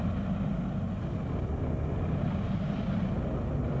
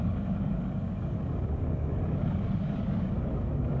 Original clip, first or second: first